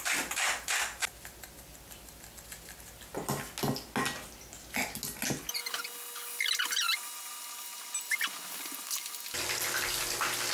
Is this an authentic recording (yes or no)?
yes